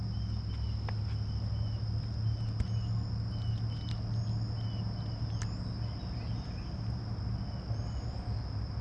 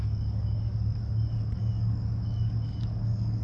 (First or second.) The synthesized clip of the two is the second